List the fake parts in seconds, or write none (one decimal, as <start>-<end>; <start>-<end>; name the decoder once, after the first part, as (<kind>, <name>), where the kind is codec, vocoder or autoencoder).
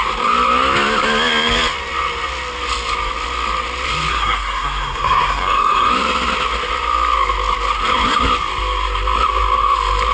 4.1-5.9 (codec, SNAC)